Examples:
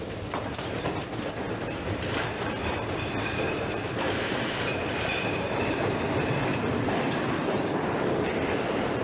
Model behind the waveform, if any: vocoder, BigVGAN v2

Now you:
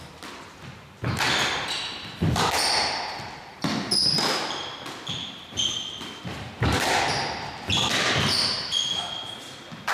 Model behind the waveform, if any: none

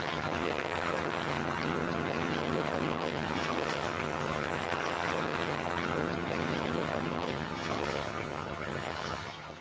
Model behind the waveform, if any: vocoder, HiFi-GAN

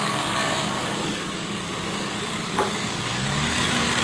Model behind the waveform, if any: codec, DAC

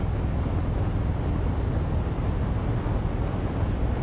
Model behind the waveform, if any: none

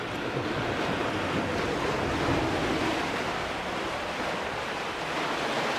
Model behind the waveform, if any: none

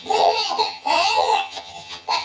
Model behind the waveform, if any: vocoder, HiFi-GAN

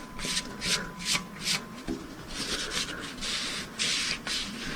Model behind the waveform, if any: none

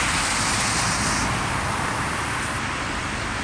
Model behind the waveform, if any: none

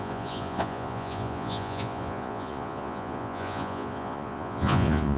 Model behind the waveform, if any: vocoder, Vocos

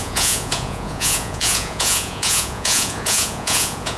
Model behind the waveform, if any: vocoder, Vocos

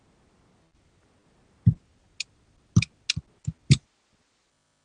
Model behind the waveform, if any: none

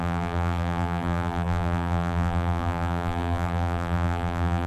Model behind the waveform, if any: vocoder, BigVGAN v2